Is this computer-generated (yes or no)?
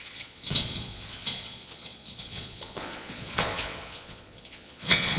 yes